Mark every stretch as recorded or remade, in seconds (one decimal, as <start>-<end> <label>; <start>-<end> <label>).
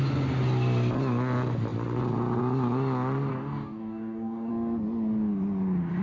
0.0-3.3 recorded; 3.3-4.5 remade; 4.5-6.0 recorded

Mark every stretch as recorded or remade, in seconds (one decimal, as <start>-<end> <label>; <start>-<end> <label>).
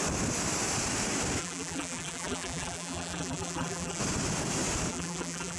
0.0-1.4 recorded; 1.4-4.0 remade; 4.0-4.9 recorded; 4.9-5.6 remade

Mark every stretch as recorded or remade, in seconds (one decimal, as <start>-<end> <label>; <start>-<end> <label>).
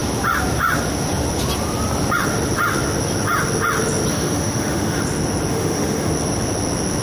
0.0-4.1 recorded; 4.1-5.0 remade; 5.0-5.5 recorded; 5.5-6.1 remade; 6.1-7.0 recorded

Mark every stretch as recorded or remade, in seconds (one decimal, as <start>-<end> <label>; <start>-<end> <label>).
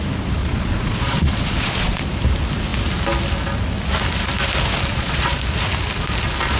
0.0-0.4 recorded; 0.4-2.0 remade; 2.0-4.9 recorded; 4.9-5.4 remade; 5.4-6.6 recorded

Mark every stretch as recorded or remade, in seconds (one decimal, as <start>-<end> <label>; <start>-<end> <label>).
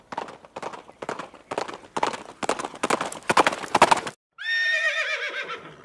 0.0-5.8 recorded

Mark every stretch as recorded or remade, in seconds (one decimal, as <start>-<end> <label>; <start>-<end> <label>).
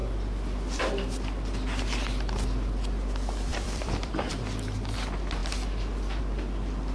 0.0-3.5 recorded; 3.5-4.3 remade; 4.3-6.9 recorded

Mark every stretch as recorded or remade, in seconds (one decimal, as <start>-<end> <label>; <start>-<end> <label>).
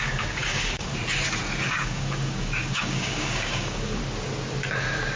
0.0-0.9 remade; 0.9-1.7 recorded; 1.7-4.0 remade; 4.0-5.2 recorded